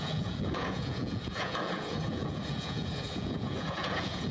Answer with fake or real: fake